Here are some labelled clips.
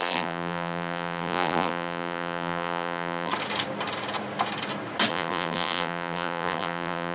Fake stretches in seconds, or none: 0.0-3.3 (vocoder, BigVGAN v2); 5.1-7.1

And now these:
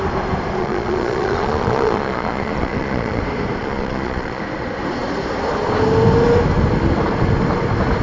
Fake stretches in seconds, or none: 0.6-3.2 (vocoder, Vocos); 3.6-4.4

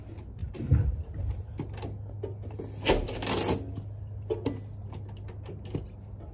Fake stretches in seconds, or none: none

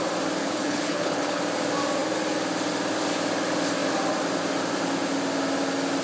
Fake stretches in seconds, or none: 0.4-1.4 (codec, HILCodec)